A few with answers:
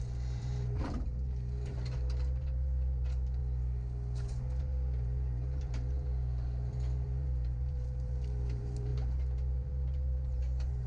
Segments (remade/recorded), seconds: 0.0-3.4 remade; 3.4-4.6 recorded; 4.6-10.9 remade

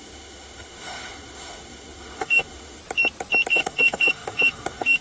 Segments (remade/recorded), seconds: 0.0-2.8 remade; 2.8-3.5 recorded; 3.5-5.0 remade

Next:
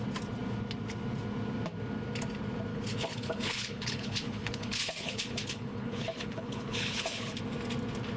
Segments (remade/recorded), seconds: 0.0-2.7 recorded; 2.7-7.4 remade; 7.4-8.2 recorded

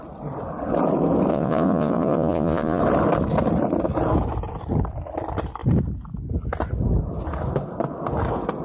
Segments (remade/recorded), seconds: 0.0-1.3 recorded; 1.3-2.8 remade; 2.8-8.6 recorded